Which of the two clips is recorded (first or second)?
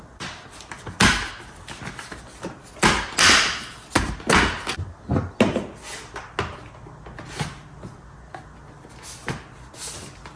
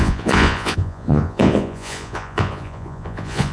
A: first